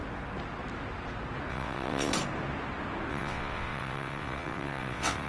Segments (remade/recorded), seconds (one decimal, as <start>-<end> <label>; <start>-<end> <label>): 0.0-1.5 recorded; 1.5-2.1 remade; 2.1-3.1 recorded; 3.1-5.3 remade